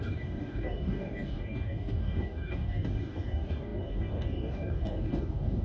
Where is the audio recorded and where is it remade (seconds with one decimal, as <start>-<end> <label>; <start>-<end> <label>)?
0.0-5.6 remade